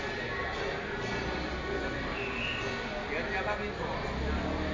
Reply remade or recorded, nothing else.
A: recorded